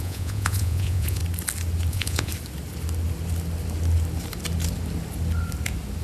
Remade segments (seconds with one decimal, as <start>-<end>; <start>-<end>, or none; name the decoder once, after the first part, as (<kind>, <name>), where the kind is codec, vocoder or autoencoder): 0.0-1.2 (vocoder, Vocos); 1.9-2.3